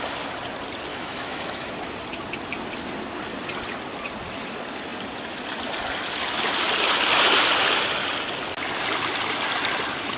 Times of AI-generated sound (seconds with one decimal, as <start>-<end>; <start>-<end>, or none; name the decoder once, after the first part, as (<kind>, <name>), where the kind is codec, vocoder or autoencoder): 0.9-1.7 (autoencoder, DAC-VAE)